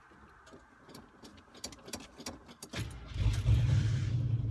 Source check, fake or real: real